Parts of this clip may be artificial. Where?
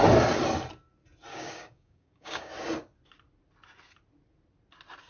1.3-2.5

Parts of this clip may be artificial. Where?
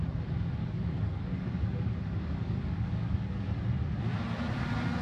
0.6-3.6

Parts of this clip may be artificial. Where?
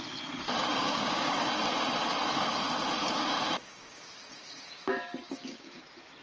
0.7-1.5; 3.0-5.8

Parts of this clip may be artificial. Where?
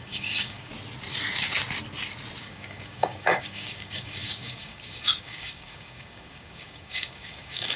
0.0-0.7; 2.4-7.8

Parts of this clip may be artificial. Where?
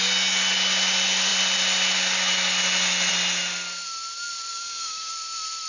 4.5-5.1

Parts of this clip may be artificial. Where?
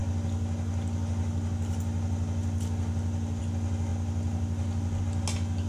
none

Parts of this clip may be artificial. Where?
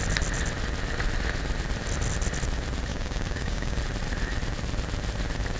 2.9-3.8